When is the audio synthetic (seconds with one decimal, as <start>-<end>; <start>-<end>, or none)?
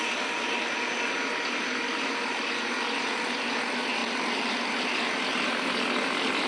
none